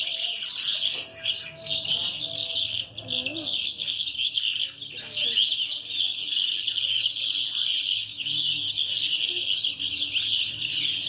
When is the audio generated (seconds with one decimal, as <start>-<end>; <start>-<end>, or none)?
1.1-1.6; 8.1-8.9

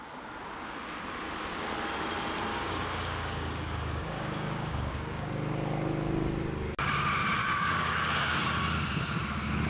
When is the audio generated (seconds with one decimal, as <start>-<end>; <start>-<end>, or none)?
2.5-5.3; 7.4-8.6

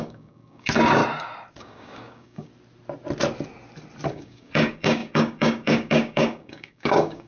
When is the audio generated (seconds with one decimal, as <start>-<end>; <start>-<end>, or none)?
0.0-1.0; 1.6-2.5; 4.1-7.3

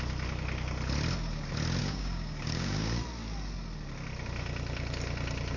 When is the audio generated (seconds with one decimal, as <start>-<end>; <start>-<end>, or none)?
1.8-3.0

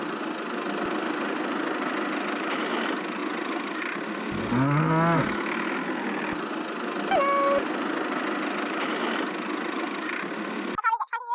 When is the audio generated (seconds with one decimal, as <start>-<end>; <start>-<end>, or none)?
none

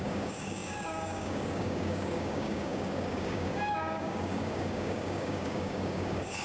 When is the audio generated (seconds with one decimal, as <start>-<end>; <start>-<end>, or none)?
0.0-6.4